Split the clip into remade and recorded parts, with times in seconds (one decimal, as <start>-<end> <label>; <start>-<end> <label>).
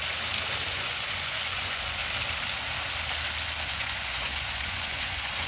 0.0-0.7 recorded; 0.7-2.0 remade; 2.0-3.7 recorded; 3.7-5.5 remade